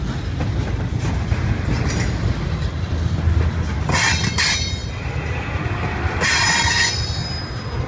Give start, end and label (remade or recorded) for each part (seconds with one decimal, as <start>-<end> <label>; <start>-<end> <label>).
0.0-7.9 recorded